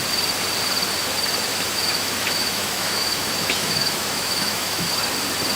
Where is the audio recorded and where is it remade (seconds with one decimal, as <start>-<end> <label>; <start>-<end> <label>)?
0.0-1.5 recorded; 1.5-4.9 remade; 4.9-5.6 recorded